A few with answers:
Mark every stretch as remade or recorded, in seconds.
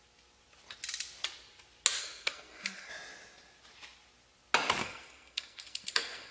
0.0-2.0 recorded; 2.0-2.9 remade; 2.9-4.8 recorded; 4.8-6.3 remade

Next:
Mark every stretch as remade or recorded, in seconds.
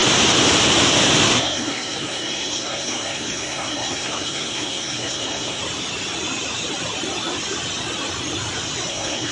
0.0-1.2 recorded; 1.2-5.6 remade; 5.6-8.9 recorded; 8.9-9.3 remade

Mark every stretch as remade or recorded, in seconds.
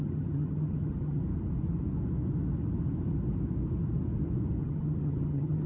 0.0-1.2 remade; 1.2-4.6 recorded; 4.6-5.7 remade